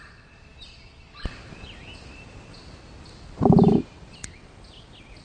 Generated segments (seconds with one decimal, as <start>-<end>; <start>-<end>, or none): none